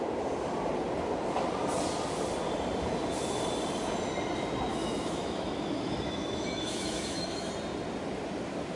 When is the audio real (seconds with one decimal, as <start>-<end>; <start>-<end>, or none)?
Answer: 0.0-4.7; 7.5-8.8